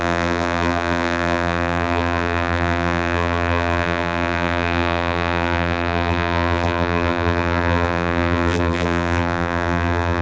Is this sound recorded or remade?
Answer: remade